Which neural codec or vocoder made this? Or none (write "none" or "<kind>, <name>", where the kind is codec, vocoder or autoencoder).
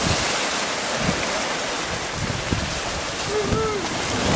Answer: none